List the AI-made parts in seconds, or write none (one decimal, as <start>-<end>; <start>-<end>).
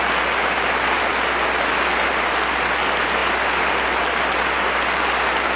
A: none